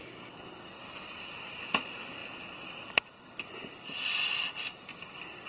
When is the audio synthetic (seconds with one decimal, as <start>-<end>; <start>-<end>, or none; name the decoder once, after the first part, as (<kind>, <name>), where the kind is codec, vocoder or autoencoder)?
none